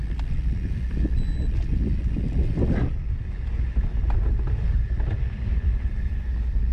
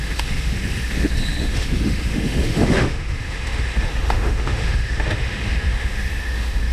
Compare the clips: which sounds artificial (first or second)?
second